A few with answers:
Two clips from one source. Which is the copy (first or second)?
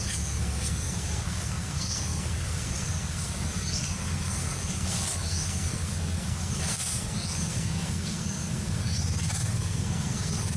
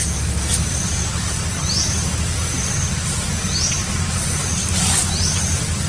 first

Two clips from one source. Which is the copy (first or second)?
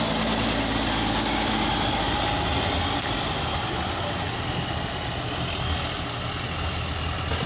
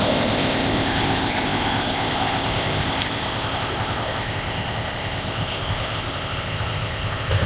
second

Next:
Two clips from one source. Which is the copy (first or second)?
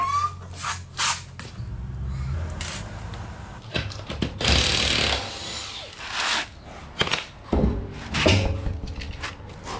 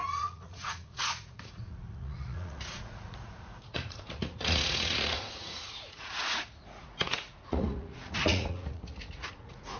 second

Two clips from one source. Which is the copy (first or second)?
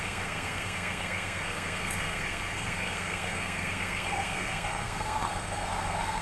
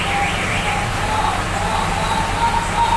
first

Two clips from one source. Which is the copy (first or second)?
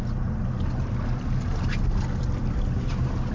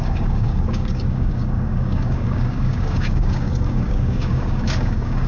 second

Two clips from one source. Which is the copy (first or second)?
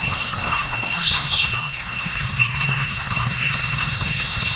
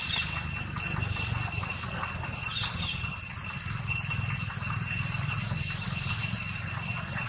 first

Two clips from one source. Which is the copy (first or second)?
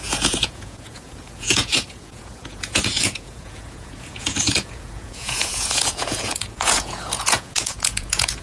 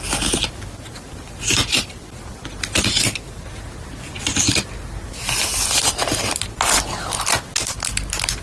first